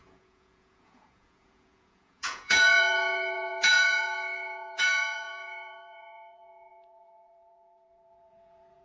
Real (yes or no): no